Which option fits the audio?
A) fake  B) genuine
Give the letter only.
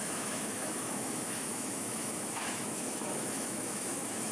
A